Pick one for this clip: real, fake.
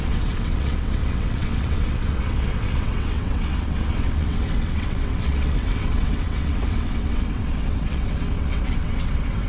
fake